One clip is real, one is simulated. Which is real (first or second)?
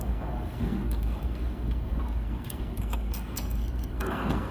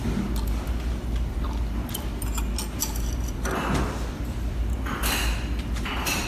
second